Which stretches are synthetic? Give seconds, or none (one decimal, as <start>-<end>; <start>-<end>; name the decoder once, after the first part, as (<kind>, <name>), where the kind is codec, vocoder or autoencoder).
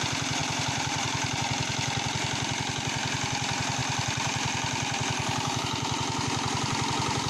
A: 0.4-1.4 (vocoder, BigVGAN v2); 3.8-5.6